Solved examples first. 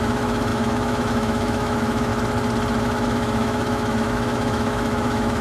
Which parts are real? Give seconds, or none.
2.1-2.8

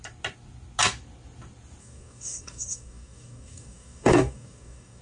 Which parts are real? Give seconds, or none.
0.0-1.8